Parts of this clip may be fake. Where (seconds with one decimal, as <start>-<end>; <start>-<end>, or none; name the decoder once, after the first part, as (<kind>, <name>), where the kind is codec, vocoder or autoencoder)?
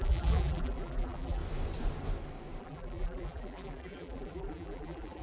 0.0-1.4 (vocoder, BigVGAN v2); 2.6-5.2